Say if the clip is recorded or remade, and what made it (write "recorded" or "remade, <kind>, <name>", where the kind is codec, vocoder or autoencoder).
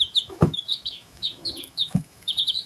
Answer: remade, autoencoder, DAC-VAE